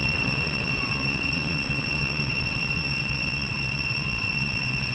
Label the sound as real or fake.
fake